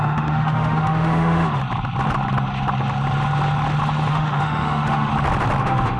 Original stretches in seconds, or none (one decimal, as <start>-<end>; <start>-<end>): 1.6-4.1; 5.1-5.6